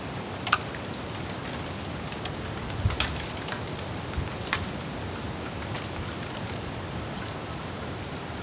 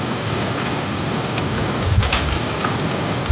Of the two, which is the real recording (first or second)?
first